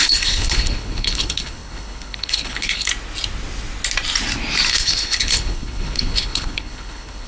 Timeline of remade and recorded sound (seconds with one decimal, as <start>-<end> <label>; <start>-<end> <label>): 0.0-2.9 remade; 2.9-4.7 recorded; 4.7-7.3 remade

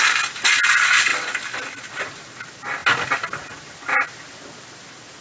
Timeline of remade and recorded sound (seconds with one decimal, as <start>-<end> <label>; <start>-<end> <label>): 0.0-5.2 recorded

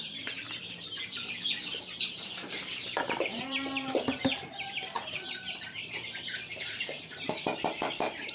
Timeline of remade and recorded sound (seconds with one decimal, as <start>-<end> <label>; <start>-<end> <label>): 0.0-8.3 remade

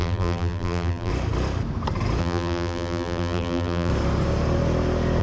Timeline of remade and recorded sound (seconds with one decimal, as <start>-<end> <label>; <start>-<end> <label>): 0.0-1.1 remade; 1.1-2.2 recorded; 2.2-3.9 remade; 3.9-5.2 recorded

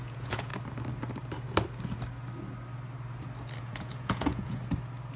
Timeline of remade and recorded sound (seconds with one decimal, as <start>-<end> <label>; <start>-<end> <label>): 0.0-0.5 remade; 0.5-3.6 recorded; 3.6-4.6 remade; 4.6-5.2 recorded

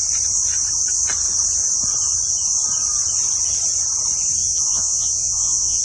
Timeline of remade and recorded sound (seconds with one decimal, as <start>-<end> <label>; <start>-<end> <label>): 0.0-4.4 recorded; 4.4-5.8 remade

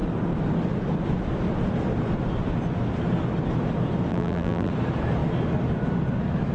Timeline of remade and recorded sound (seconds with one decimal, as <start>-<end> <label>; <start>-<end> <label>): 0.0-4.1 recorded; 4.1-4.7 remade; 4.7-6.5 recorded